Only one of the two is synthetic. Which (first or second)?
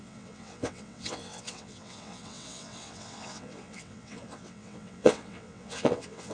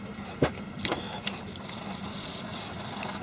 first